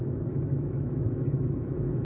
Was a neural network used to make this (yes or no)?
yes